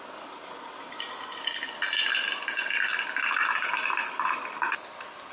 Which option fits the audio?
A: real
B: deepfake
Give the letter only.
A